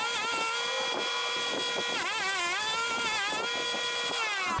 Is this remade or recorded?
recorded